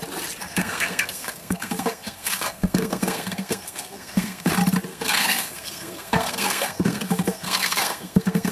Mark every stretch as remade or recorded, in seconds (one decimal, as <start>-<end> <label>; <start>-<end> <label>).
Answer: 0.0-0.4 recorded; 0.4-4.5 remade; 4.5-4.9 recorded; 4.9-8.5 remade